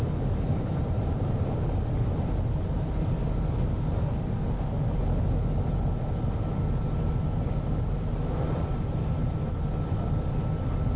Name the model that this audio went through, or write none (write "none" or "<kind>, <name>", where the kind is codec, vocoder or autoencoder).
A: none